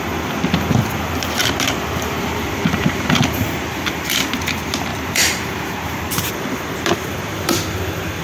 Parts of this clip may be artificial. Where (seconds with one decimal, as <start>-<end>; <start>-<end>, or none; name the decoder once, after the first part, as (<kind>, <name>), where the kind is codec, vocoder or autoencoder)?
1.4-4.3 (vocoder, BigVGAN v2); 4.9-6.3